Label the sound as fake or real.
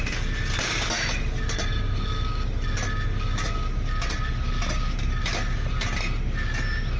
real